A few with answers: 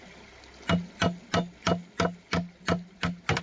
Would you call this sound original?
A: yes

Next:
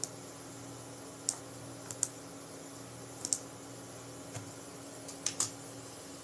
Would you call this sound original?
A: yes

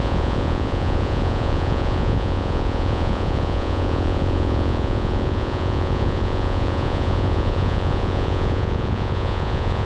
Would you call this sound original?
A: no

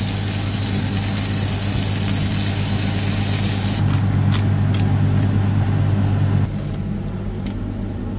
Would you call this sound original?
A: yes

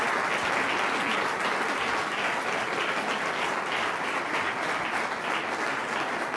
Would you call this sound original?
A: yes